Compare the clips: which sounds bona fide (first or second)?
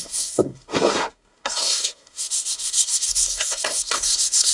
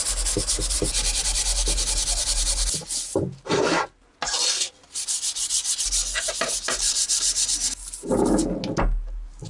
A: second